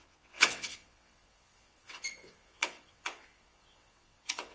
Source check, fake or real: fake